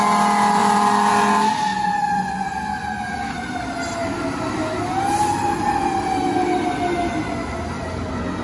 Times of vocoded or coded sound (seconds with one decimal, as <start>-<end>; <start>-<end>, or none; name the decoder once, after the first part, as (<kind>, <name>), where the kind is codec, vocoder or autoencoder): none